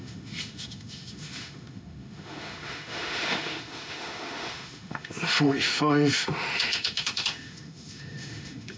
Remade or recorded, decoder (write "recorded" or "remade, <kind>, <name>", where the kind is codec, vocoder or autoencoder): remade, autoencoder, DAC-VAE